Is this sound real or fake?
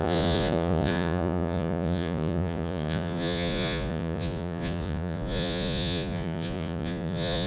fake